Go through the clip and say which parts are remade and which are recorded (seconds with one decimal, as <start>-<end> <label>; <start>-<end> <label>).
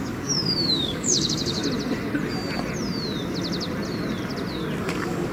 0.0-1.6 remade; 1.6-4.8 recorded; 4.8-5.3 remade